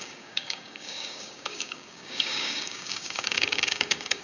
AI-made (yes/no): yes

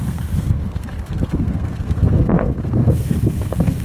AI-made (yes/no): yes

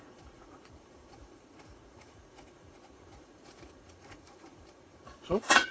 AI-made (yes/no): yes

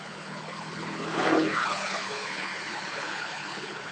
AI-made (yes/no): yes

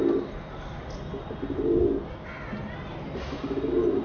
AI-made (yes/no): no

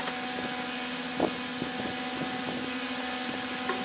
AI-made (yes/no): no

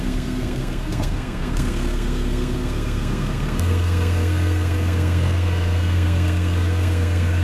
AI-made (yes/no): yes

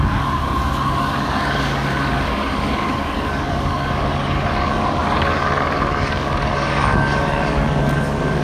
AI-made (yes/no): yes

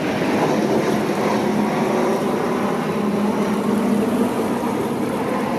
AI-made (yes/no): no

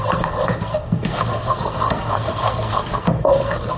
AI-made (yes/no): yes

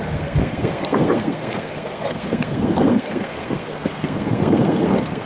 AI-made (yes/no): yes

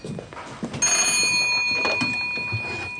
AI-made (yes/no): no